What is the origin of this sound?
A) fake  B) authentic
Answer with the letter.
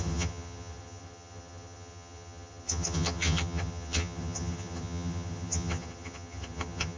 A